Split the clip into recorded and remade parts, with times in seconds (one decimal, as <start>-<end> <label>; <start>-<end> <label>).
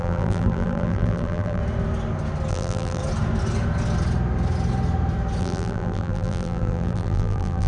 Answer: 0.0-1.6 remade; 1.6-2.5 recorded; 2.5-3.0 remade; 3.0-5.4 recorded; 5.4-7.7 remade